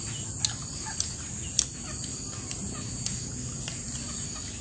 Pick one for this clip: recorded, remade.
recorded